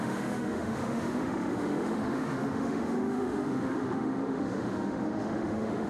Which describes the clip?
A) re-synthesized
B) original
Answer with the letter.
A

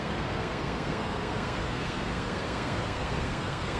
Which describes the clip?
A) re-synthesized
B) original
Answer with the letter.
A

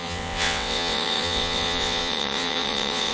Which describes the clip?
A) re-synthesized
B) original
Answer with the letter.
A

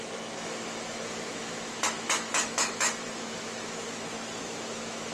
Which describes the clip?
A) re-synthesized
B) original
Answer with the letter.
A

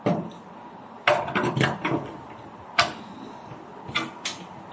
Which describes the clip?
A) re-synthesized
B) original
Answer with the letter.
B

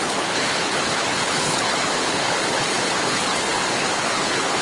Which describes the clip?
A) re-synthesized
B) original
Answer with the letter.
A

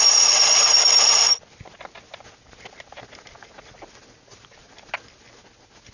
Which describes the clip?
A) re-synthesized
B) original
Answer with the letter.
B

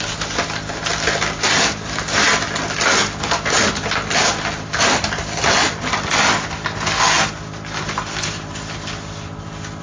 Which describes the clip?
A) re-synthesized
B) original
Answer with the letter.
B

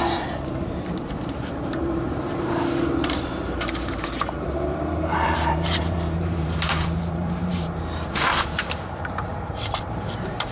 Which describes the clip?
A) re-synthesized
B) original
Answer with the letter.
A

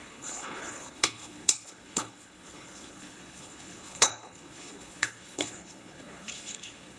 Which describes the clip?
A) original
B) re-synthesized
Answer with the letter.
B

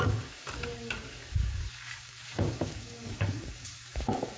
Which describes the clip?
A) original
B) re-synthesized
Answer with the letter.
B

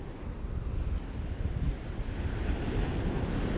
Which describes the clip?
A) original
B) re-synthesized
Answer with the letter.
A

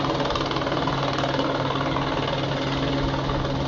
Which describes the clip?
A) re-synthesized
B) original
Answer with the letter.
B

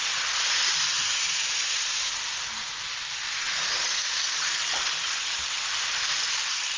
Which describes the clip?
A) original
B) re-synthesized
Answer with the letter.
A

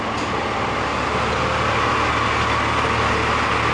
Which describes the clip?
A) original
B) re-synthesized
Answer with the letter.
A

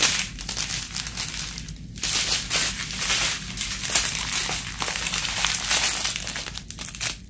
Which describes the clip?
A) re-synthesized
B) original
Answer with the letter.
B